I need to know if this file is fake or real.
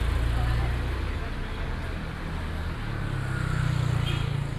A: real